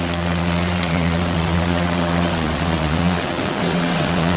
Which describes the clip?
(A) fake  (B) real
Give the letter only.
A